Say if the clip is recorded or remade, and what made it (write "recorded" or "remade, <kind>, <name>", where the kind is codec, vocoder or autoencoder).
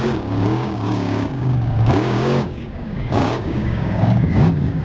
remade, codec, DAC